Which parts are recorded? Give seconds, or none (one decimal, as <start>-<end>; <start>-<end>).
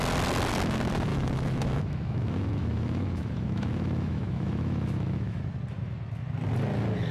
0.0-1.1; 5.4-7.1